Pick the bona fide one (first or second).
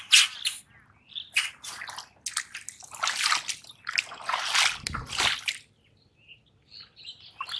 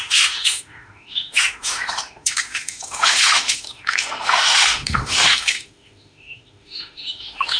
first